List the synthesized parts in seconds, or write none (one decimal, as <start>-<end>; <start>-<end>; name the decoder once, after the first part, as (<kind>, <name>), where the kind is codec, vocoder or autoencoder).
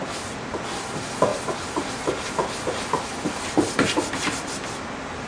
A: none